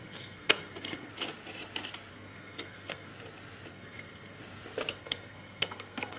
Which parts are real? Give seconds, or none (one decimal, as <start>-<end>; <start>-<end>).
1.1-2.1; 3.1-3.7; 4.4-4.9